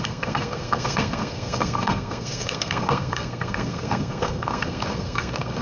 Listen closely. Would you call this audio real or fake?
fake